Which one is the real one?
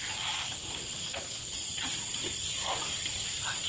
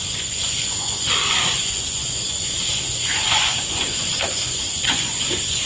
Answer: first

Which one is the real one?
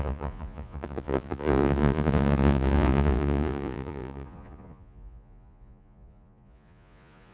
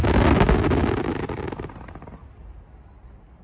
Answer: second